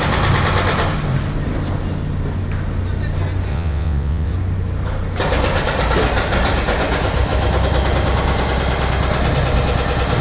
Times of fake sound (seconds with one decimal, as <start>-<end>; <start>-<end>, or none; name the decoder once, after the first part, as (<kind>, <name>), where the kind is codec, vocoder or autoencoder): 3.5-4.3 (vocoder, WaveNeXt)